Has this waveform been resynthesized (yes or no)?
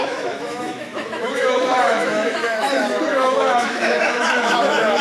yes